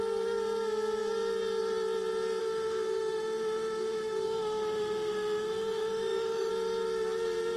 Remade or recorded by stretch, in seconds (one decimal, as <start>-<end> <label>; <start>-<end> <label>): 0.0-2.4 recorded; 2.4-6.5 remade; 6.5-7.6 recorded